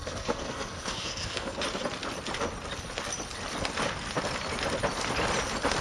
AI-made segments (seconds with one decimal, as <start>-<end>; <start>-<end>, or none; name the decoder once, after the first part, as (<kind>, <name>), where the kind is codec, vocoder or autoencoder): 0.0-1.6 (codec, SNAC)